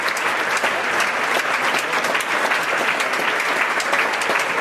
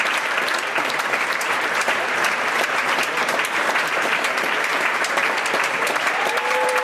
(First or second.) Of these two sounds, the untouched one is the first